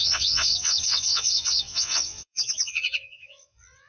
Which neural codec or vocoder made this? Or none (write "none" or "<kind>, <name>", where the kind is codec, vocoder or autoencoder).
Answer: vocoder, WaveNeXt